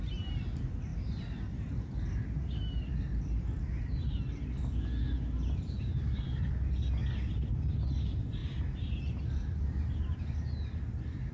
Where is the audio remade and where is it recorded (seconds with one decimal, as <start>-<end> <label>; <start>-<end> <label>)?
0.0-5.4 recorded; 5.4-6.5 remade; 6.5-8.4 recorded; 8.4-10.0 remade; 10.0-11.3 recorded